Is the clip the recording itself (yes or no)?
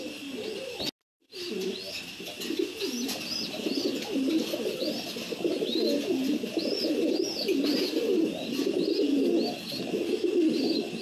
yes